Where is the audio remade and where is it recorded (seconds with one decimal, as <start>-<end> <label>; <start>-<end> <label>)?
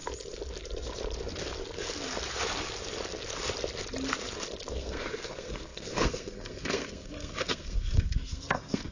0.0-4.7 recorded; 4.7-8.9 remade